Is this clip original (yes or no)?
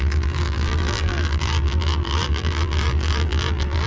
no